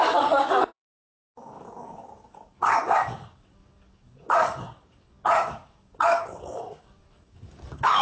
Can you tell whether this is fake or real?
fake